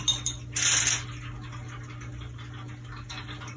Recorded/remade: recorded